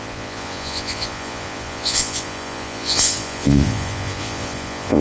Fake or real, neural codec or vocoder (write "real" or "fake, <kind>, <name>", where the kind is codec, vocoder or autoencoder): fake, vocoder, Vocos